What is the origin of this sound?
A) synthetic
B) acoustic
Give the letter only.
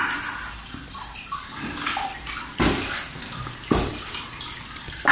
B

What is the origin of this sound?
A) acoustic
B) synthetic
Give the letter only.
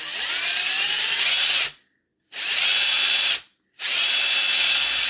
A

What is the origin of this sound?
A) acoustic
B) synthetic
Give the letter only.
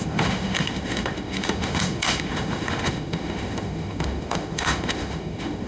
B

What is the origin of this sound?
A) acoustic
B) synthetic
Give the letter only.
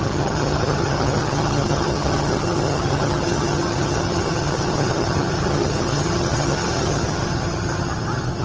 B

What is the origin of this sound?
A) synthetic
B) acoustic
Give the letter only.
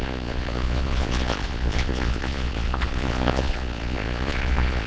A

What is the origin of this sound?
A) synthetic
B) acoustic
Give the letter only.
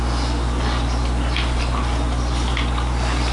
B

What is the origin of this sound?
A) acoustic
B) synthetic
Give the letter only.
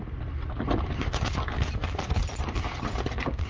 A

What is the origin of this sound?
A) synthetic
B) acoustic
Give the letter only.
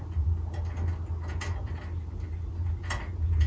B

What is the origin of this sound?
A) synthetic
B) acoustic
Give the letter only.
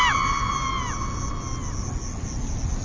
B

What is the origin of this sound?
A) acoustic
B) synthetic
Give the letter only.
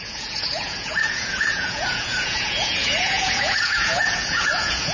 B